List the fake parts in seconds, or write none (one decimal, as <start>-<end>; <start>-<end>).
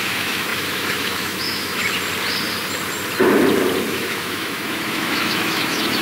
0.0-1.8; 3.9-6.0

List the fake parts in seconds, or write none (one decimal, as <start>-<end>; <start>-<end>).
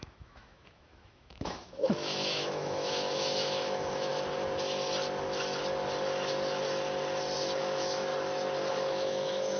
0.0-4.1; 7.6-8.1; 8.7-9.6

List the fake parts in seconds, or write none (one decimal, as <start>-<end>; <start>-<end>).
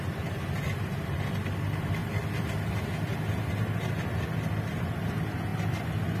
none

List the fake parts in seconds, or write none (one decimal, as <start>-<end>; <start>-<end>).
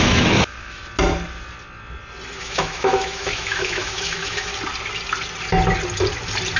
0.0-0.8; 2.4-4.5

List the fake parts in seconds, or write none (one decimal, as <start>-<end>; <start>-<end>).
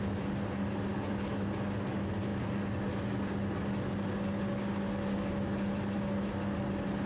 none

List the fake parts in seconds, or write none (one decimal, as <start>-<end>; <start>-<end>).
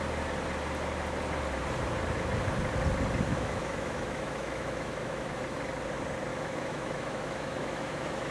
3.3-5.4; 6.3-8.3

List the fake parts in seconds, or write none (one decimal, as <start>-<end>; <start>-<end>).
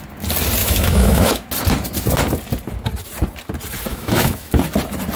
0.6-1.5; 3.9-4.5